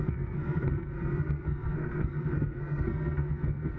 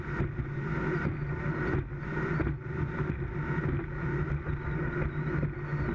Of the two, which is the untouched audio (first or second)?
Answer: second